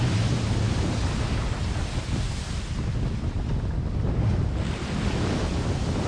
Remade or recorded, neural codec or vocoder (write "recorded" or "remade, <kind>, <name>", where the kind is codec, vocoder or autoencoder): recorded